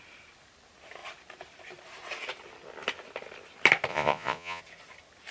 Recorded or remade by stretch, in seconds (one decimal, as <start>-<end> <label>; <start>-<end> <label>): 0.0-3.9 recorded; 3.9-4.6 remade; 4.6-5.3 recorded